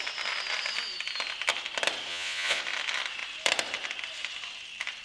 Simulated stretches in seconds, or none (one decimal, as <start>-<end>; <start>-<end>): 2.1-2.6